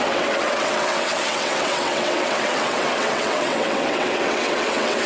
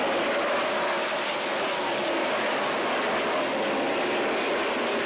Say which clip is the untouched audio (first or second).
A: second